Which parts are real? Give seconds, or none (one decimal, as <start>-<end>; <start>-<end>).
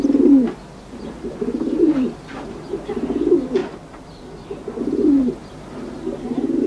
0.0-3.6; 4.8-6.7